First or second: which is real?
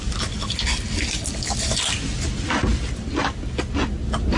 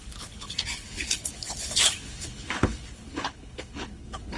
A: first